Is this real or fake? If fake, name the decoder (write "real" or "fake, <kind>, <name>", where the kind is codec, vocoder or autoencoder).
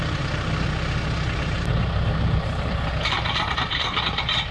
fake, vocoder, BigVGAN v2